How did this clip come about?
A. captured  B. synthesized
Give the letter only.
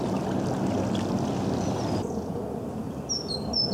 A